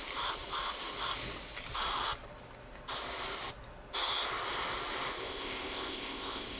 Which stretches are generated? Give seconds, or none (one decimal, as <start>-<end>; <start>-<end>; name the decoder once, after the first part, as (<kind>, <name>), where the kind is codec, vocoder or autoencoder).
5.2-6.6 (codec, ZipCodec)